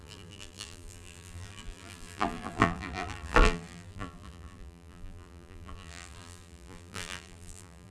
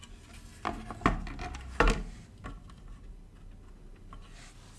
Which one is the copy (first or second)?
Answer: first